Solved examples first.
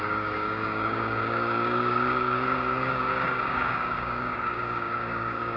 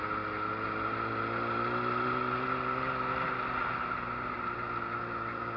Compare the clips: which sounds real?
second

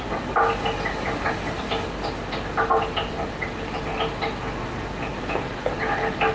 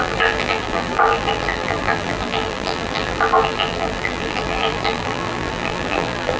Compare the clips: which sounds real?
first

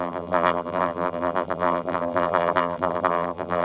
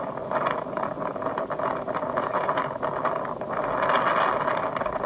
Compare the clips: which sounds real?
second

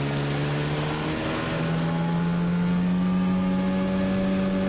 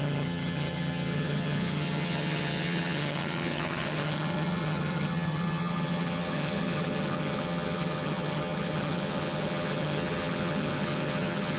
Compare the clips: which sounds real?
first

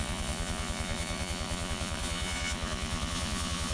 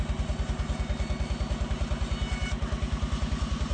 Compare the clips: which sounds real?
second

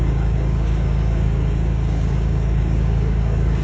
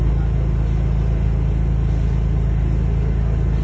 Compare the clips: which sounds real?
second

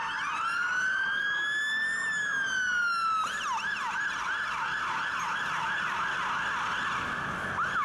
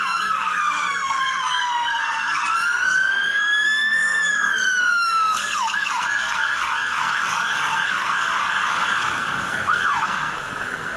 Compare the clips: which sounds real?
first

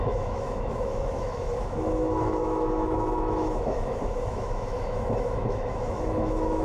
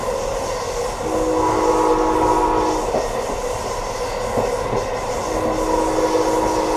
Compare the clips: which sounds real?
second